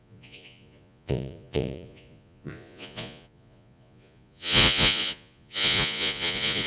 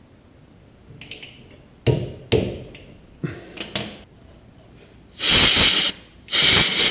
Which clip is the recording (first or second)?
second